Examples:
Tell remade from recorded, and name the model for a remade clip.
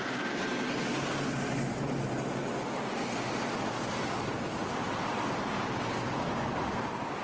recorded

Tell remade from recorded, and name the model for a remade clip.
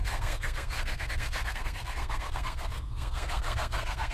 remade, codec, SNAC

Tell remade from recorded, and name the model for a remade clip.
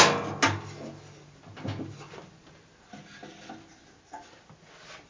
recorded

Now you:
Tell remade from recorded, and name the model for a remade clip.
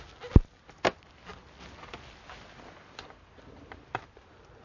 recorded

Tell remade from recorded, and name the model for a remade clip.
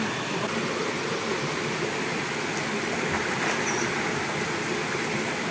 recorded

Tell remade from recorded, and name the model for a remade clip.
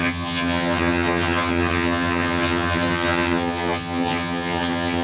remade, vocoder, HiFi-GAN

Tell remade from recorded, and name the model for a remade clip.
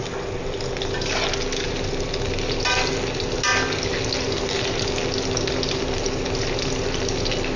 recorded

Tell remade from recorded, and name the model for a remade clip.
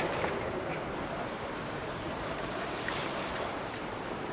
remade, vocoder, BigVGAN v2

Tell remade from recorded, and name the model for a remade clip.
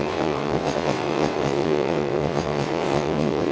remade, vocoder, WaveNeXt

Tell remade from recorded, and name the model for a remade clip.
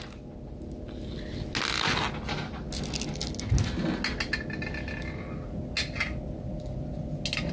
recorded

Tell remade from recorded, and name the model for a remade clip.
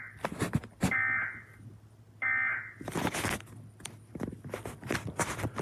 recorded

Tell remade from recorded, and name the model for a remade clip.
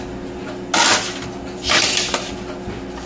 recorded